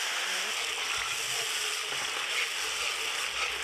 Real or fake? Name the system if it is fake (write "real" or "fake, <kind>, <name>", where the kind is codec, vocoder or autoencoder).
real